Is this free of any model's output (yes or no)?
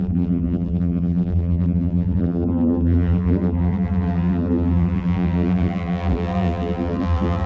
no